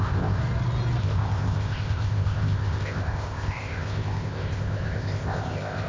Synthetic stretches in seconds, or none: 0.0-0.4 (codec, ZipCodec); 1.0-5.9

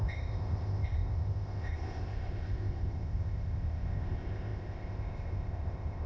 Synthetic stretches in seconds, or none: 0.0-6.1 (codec, ZipCodec)

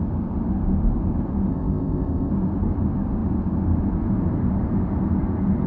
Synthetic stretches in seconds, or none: 1.5-2.3 (codec, ZipCodec)

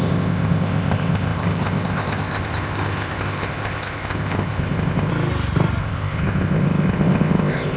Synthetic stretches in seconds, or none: 0.0-5.1 (codec, ZipCodec); 5.8-7.8

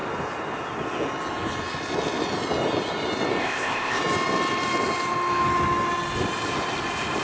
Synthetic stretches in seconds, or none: 3.4-4.0 (codec, ZipCodec)

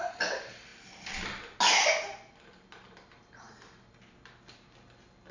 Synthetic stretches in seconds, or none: none

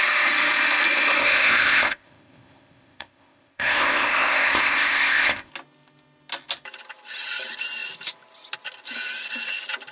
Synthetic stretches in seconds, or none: 1.2-5.5 (codec, ZipCodec)